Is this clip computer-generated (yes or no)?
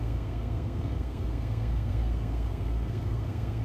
yes